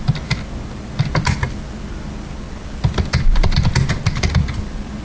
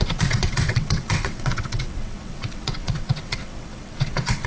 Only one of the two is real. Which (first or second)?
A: first